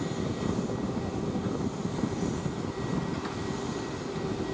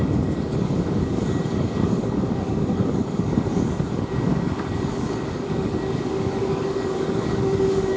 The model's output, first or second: second